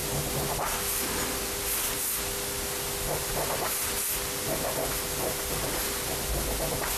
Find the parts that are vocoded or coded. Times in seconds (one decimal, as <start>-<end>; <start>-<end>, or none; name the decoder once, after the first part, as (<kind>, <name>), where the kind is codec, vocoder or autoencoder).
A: none

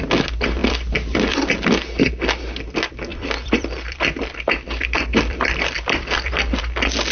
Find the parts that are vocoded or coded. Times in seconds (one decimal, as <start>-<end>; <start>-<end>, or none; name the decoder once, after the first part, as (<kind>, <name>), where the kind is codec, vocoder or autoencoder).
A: 0.6-2.1 (vocoder, BigVGAN v2); 3.1-6.6

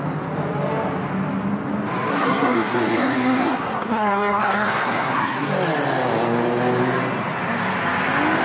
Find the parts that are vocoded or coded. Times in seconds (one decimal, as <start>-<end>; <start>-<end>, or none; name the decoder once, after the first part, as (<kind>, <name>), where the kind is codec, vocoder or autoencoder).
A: 2.1-5.5 (codec, SNAC)

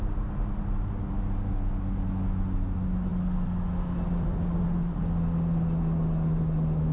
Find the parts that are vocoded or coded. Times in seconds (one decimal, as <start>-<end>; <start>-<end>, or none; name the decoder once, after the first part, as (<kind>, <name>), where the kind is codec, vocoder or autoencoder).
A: none